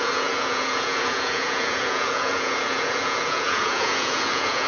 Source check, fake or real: fake